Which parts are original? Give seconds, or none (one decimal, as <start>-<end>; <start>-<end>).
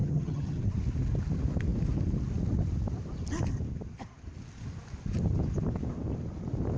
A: 0.6-6.8